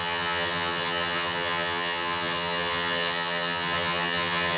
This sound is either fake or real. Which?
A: fake